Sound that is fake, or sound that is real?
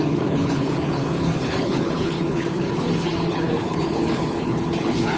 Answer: fake